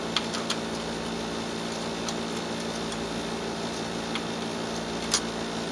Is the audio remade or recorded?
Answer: recorded